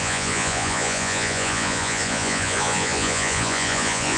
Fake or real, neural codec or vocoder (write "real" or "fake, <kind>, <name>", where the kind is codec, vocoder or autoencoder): fake, vocoder, Vocos